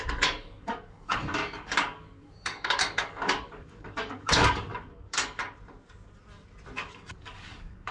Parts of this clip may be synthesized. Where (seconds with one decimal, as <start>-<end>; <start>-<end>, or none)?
0.0-5.4; 6.8-7.9

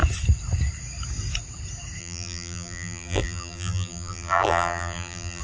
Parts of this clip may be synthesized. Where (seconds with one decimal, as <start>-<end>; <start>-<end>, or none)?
2.0-5.4

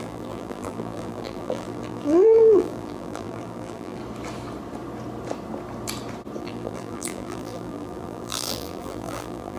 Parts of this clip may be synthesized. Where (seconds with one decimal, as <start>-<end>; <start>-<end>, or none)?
0.0-4.0; 6.4-9.6

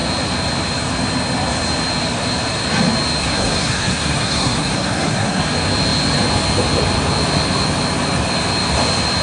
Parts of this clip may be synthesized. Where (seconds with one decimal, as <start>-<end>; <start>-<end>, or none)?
3.2-5.4

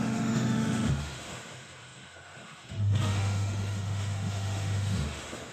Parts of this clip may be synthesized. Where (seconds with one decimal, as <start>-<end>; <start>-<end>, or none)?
0.0-5.5

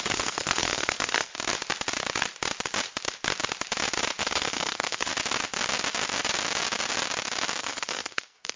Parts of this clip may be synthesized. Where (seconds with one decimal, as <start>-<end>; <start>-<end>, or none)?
0.0-1.3; 4.2-5.1; 7.6-8.6

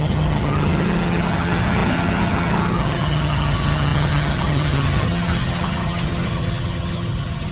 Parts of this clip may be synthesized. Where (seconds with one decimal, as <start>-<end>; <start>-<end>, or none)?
0.0-7.5

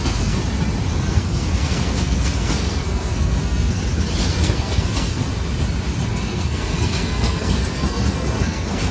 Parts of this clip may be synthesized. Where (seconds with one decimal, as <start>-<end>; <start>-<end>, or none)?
0.0-0.4; 1.0-3.8; 4.3-5.3; 6.1-8.9